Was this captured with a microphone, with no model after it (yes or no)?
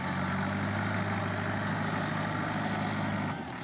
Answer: yes